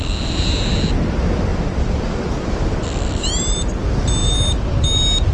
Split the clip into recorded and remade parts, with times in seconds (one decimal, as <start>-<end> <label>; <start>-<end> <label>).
0.0-1.5 recorded; 1.5-3.6 remade; 3.6-4.2 recorded; 4.2-4.7 remade; 4.7-5.3 recorded